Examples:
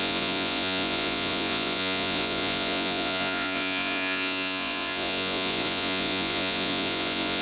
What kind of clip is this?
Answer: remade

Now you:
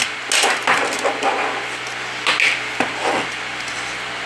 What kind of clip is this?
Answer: recorded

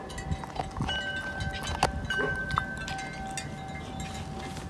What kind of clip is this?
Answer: recorded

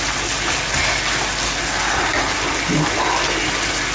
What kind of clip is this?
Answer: recorded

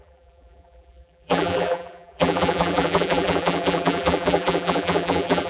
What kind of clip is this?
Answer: remade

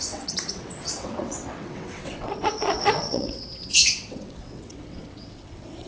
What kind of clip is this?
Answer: remade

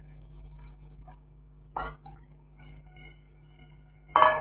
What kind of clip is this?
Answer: remade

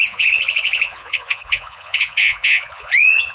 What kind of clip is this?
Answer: remade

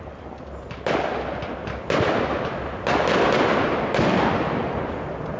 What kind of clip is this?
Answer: recorded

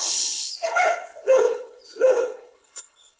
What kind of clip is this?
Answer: remade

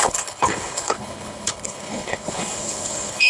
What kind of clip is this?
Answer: remade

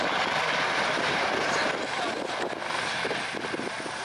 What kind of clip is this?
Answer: recorded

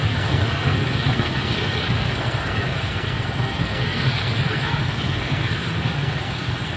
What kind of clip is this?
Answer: remade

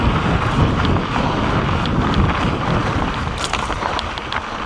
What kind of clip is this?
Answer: recorded